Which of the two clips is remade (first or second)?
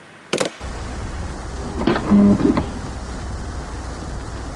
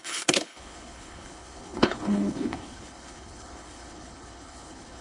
second